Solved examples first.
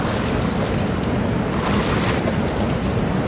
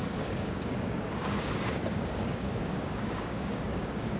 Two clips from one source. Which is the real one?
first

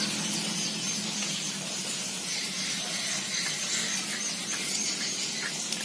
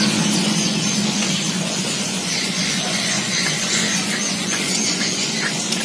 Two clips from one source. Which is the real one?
first